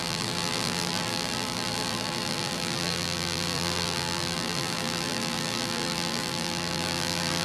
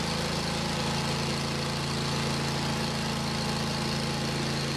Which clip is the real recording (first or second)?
second